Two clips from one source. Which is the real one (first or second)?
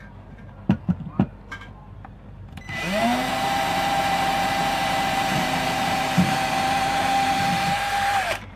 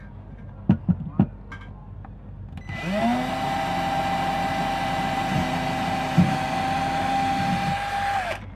second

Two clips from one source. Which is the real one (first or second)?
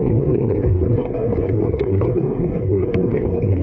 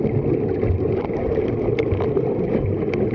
second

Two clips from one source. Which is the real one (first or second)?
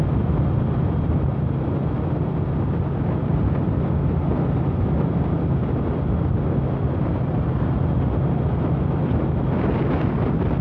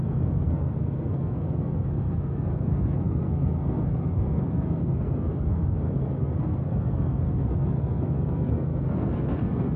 first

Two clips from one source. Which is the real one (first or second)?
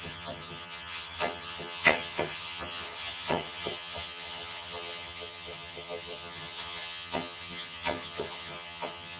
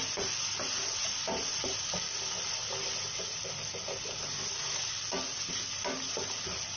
second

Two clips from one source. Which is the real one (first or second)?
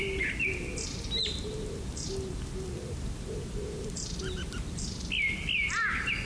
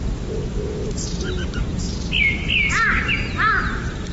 second